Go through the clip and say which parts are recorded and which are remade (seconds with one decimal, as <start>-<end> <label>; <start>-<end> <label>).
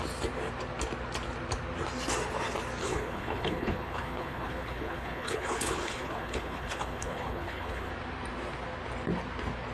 0.0-2.8 recorded; 2.8-7.9 remade; 7.9-9.7 recorded